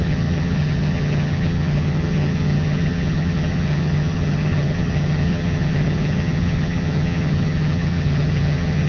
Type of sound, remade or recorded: remade